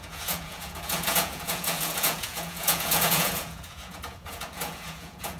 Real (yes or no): no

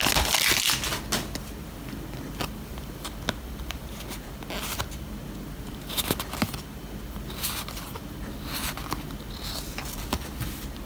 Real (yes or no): yes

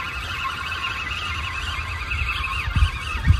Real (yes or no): yes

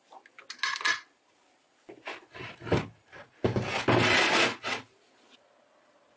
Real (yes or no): yes